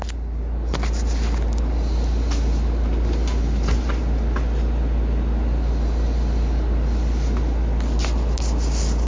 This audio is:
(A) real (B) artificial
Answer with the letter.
A